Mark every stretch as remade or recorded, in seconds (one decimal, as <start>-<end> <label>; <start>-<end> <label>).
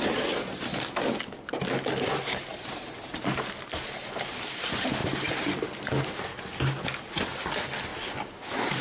0.0-2.5 recorded; 2.5-4.6 remade; 4.6-5.0 recorded; 5.0-6.0 remade; 6.0-8.8 recorded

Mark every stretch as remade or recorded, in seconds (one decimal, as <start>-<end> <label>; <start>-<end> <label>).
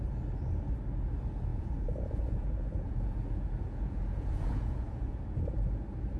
0.0-1.5 recorded; 1.5-5.2 remade; 5.2-6.2 recorded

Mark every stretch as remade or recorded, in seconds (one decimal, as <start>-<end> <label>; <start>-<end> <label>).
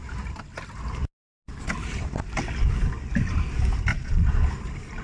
0.0-3.9 recorded; 3.9-4.5 remade; 4.5-5.0 recorded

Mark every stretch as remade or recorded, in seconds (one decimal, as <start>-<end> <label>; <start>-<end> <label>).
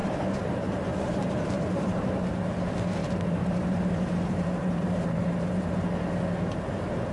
0.0-0.9 recorded; 0.9-2.0 remade; 2.0-3.0 recorded; 3.0-5.7 remade; 5.7-7.1 recorded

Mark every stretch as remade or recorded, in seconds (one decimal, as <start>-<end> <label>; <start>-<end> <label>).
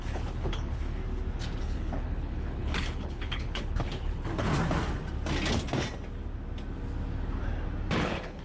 0.0-1.0 remade; 1.0-1.6 recorded; 1.6-4.5 remade; 4.5-8.0 recorded; 8.0-8.4 remade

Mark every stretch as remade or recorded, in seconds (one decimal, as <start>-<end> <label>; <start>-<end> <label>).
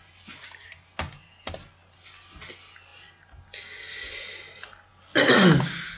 0.0-6.0 recorded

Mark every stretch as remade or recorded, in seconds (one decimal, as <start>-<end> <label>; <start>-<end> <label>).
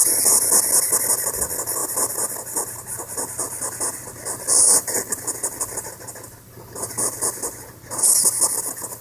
0.0-9.0 recorded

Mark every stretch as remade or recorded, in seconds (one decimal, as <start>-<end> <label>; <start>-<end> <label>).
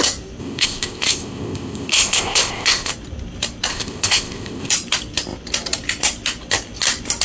0.0-0.4 recorded; 0.4-2.9 remade; 2.9-3.7 recorded; 3.7-4.7 remade; 4.7-7.2 recorded